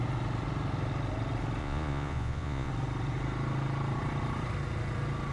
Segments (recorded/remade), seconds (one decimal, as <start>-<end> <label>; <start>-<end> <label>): 0.0-1.6 recorded; 1.6-2.7 remade; 2.7-5.3 recorded

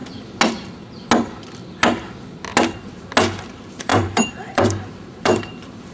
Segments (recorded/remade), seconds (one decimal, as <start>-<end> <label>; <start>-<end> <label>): 0.0-3.5 recorded; 3.5-5.9 remade

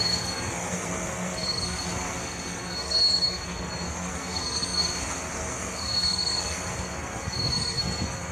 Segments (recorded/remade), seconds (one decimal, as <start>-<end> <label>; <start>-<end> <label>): 0.0-8.3 remade

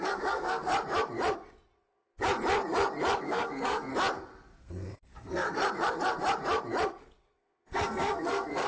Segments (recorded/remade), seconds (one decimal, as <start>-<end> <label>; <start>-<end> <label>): 0.0-0.7 remade; 0.7-3.2 recorded; 3.2-3.9 remade; 3.9-4.6 recorded; 4.6-5.6 remade; 5.6-6.9 recorded; 6.9-8.7 remade

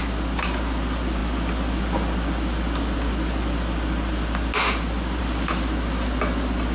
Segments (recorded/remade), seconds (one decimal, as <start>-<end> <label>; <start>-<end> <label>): 0.0-6.7 recorded

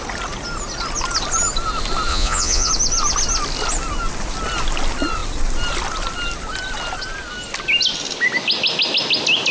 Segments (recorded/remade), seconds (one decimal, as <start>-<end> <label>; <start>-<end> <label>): 0.0-2.1 recorded; 2.1-2.7 remade; 2.7-9.5 recorded